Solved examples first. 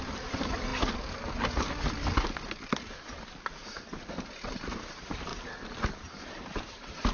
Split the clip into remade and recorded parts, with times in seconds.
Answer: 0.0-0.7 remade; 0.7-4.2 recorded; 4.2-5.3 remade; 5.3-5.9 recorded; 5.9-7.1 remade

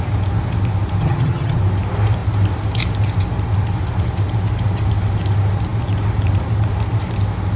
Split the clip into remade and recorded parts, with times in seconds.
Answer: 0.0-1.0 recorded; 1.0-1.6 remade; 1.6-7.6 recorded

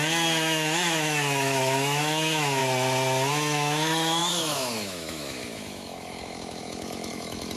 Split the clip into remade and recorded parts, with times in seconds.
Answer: 0.0-2.6 remade; 2.6-3.3 recorded; 3.3-7.6 remade

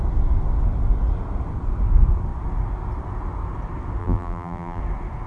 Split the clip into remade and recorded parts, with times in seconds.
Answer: 0.0-4.0 recorded; 4.0-4.8 remade; 4.8-5.3 recorded

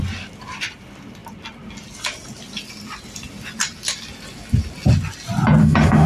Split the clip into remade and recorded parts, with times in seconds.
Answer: 0.0-5.6 recorded; 5.6-6.1 remade

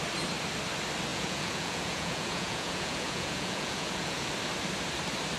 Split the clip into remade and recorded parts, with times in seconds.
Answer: 0.0-1.1 recorded; 1.1-4.3 remade; 4.3-5.4 recorded

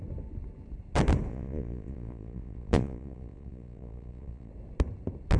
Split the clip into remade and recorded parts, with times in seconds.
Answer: 0.0-1.3 recorded; 1.3-4.5 remade; 4.5-5.4 recorded

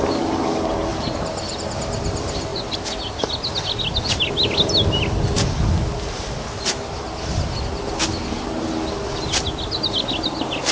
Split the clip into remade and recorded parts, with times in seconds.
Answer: 0.0-0.9 recorded; 0.9-1.8 remade; 1.8-10.7 recorded